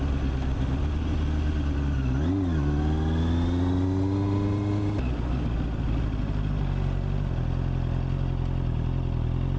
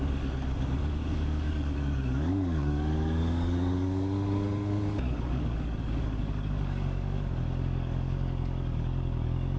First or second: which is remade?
second